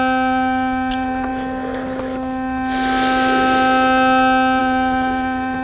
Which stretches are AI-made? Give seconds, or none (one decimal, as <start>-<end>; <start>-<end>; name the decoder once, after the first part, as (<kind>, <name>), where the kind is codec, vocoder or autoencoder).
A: 0.0-1.3 (vocoder, Vocos); 4.6-5.6